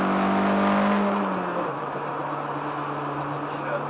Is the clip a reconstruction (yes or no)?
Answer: no